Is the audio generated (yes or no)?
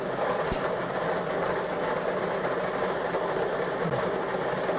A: no